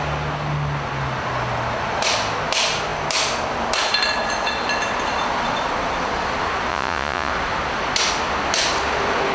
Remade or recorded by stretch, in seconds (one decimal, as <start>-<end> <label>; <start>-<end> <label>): 0.0-6.7 recorded; 6.7-7.3 remade; 7.3-9.3 recorded